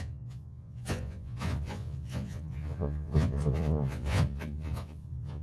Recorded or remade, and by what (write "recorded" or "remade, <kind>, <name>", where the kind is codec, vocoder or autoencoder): remade, vocoder, Vocos